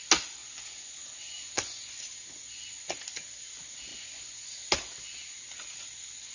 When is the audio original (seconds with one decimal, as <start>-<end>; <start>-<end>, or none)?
0.0-0.4; 2.0-3.9; 4.5-6.3